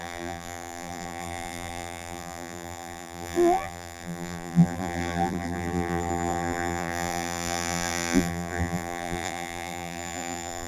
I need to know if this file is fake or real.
fake